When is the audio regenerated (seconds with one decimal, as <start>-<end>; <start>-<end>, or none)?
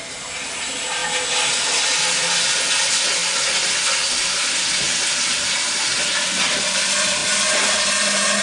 none